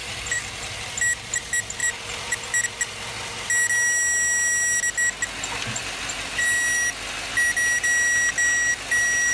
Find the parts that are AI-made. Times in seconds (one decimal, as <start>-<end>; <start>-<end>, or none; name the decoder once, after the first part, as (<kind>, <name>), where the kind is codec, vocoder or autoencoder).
0.0-0.8 (vocoder, BigVGAN v2); 1.8-2.4